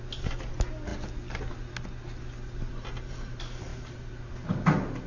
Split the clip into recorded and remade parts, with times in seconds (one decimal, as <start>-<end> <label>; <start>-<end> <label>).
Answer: 0.0-5.1 recorded

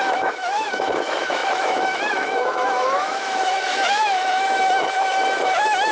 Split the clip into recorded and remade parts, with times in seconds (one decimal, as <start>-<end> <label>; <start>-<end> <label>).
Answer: 0.0-5.9 remade